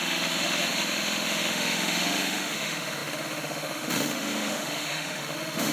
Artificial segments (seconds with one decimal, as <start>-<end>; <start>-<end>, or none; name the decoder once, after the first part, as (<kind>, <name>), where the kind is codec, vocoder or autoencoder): 0.0-5.7 (autoencoder, DAC-VAE)